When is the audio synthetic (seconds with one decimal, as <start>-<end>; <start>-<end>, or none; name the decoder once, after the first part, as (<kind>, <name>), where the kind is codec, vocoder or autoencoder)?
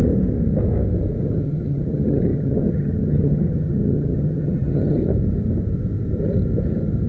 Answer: 1.2-5.0 (vocoder, HiFi-GAN)